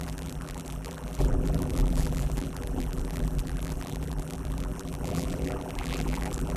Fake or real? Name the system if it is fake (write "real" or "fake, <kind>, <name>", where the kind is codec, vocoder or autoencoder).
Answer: fake, vocoder, BigVGAN v2